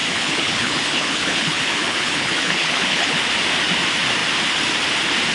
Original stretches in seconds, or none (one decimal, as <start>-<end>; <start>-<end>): 3.2-5.3